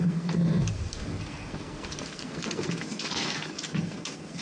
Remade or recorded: remade